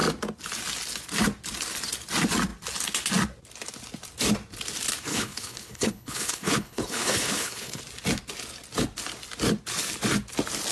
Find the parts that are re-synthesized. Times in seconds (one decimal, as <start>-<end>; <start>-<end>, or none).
5.1-7.8